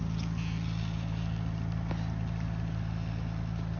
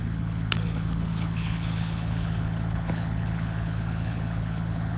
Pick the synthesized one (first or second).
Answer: second